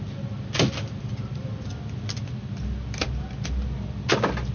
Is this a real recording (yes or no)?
yes